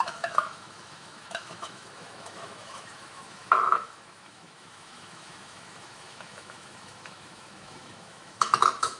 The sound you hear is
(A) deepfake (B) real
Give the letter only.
A